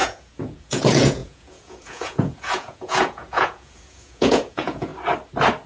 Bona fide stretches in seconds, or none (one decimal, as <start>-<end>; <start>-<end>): 4.9-5.7